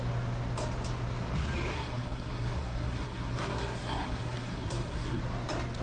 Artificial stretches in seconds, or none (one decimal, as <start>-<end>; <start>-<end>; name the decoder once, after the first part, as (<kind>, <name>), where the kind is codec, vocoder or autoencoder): 1.7-5.2 (codec, SNAC)